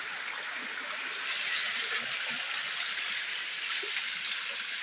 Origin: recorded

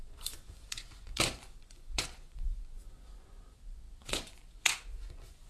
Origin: remade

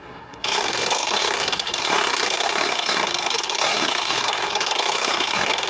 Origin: remade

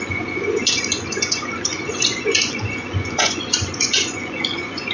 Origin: remade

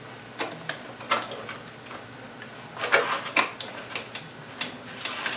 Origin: recorded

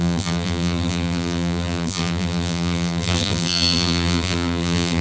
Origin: remade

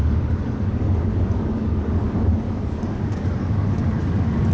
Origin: remade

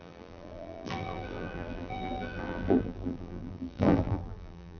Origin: remade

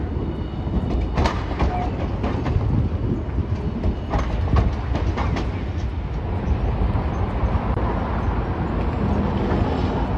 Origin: recorded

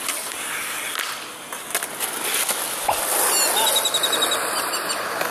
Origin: recorded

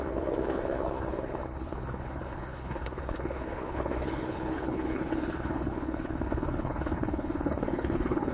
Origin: remade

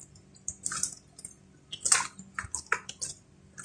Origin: recorded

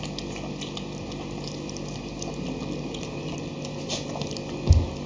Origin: recorded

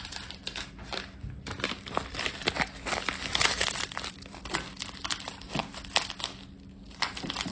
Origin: recorded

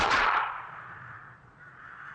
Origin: remade